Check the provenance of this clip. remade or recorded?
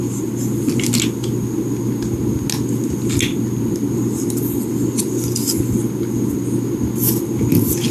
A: recorded